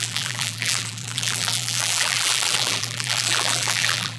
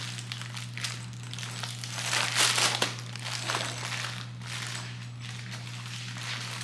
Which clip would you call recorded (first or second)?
second